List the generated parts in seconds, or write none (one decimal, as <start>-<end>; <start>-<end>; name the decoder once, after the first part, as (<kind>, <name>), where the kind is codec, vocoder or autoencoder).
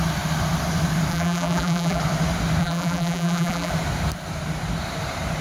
1.1-2.0 (vocoder, BigVGAN v2); 2.6-3.7